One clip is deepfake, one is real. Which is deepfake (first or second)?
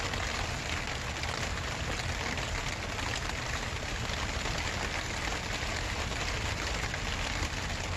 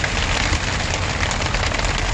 second